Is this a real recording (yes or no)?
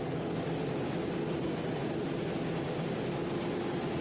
yes